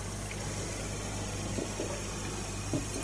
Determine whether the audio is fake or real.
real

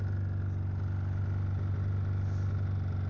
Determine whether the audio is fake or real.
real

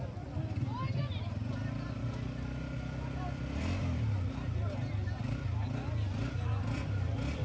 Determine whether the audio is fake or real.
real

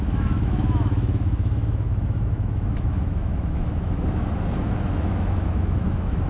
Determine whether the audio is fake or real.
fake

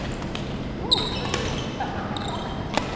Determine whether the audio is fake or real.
real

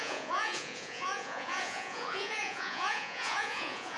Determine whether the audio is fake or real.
fake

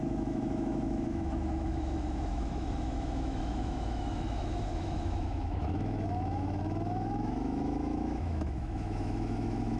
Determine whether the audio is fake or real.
fake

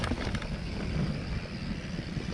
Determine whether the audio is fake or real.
real